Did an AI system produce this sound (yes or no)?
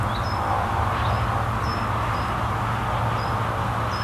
no